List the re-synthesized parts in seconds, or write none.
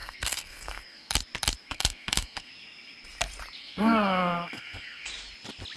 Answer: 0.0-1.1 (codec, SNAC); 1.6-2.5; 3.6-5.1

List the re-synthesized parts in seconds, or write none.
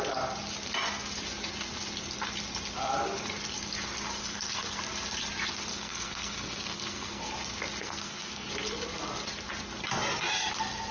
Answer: 4.2-4.8 (codec, SNAC); 5.7-7.3; 7.8-8.5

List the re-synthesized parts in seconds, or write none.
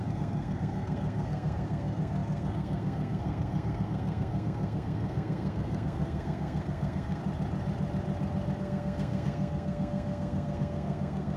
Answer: 0.0-7.2 (codec, SNAC); 8.6-11.4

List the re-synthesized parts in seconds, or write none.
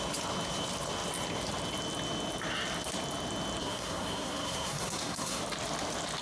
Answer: 3.6-5.4 (codec, SNAC)